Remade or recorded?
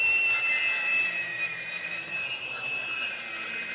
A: remade